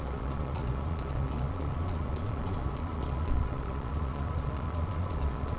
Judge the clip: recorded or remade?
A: remade